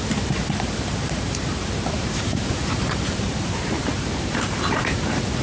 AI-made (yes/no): yes